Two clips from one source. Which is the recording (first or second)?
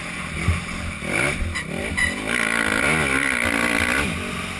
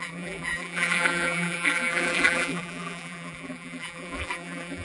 first